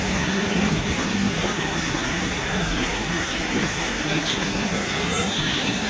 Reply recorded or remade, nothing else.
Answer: remade